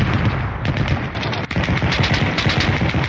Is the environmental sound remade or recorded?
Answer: recorded